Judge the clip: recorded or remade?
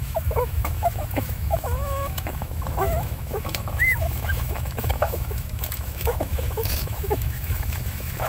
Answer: remade